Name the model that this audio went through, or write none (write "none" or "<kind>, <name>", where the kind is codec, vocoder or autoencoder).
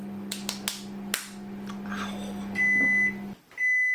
none